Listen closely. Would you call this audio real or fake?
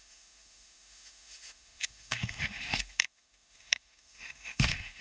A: fake